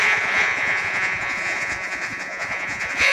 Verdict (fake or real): fake